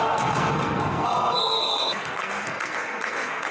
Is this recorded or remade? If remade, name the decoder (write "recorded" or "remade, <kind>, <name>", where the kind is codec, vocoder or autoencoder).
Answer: remade, codec, SNAC